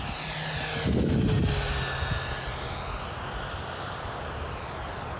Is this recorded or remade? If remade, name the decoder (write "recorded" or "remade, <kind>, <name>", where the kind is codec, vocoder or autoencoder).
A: recorded